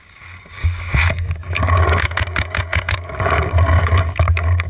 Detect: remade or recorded remade